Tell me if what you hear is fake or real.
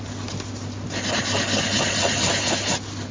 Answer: real